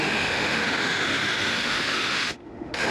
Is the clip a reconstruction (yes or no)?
yes